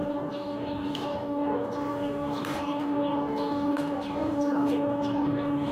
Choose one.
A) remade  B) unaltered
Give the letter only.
A